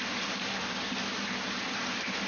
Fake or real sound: real